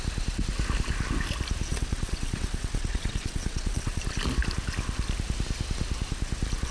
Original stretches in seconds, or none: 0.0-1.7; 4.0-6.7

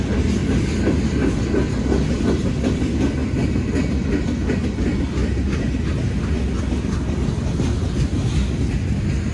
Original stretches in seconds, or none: 0.0-9.3

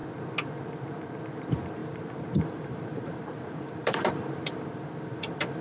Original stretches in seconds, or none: 0.0-1.8